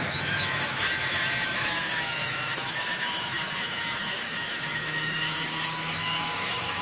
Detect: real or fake fake